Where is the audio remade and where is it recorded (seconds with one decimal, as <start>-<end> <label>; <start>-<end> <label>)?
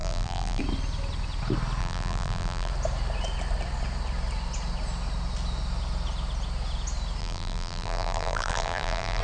0.0-0.6 remade; 0.6-1.8 recorded; 1.8-2.7 remade; 2.7-7.2 recorded; 7.2-9.2 remade